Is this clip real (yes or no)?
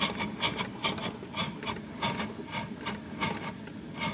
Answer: yes